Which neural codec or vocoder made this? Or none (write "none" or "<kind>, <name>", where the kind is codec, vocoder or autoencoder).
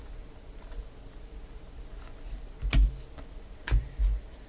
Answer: none